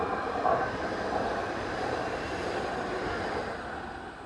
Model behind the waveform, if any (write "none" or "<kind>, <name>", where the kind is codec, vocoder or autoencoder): none